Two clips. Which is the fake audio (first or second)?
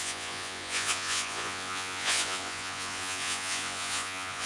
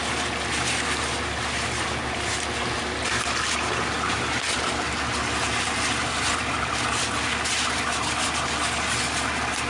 first